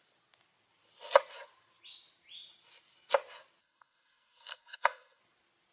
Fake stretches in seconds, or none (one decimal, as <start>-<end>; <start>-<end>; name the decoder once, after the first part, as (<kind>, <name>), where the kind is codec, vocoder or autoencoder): 3.6-5.2 (codec, SNAC)